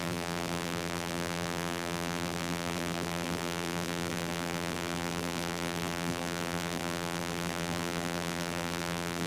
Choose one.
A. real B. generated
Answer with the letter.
B